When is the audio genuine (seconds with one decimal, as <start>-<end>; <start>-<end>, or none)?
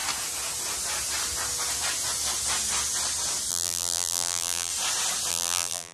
0.0-3.5; 4.7-5.3